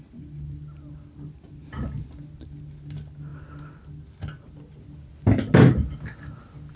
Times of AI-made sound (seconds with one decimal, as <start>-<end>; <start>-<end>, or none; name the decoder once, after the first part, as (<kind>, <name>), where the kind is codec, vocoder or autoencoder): none